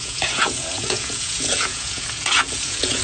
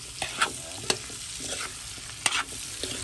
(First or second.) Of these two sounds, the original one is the second